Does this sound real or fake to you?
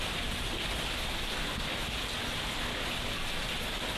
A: real